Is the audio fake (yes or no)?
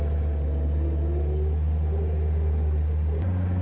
no